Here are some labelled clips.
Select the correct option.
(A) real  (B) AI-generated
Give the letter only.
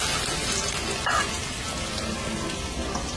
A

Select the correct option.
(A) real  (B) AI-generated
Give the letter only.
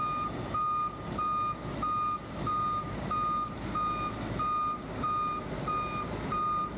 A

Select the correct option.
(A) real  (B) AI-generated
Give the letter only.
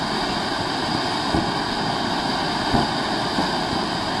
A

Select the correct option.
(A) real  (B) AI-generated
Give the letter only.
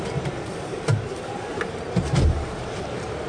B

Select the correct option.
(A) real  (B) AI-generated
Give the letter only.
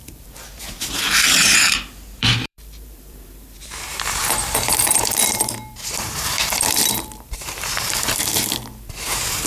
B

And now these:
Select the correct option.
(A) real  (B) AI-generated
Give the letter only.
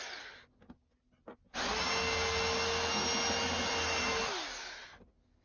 A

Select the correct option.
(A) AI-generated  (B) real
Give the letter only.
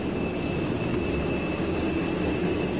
B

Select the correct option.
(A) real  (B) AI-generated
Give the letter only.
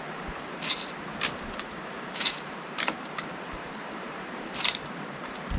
B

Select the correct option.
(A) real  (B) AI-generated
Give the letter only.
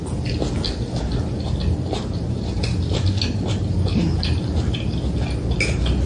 A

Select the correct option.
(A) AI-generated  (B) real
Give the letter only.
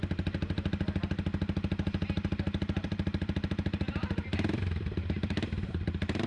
A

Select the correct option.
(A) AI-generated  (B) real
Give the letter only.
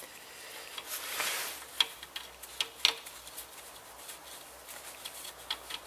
B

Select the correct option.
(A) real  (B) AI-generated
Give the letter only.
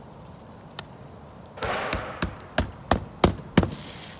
A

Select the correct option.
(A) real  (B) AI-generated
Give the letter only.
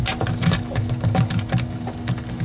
A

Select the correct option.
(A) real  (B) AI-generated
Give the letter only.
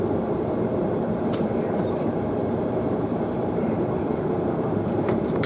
B